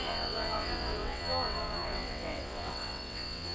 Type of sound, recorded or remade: remade